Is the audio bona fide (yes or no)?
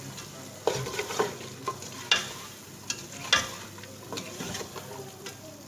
yes